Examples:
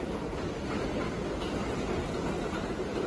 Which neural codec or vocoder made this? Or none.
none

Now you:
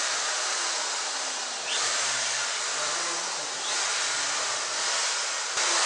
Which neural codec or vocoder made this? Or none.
none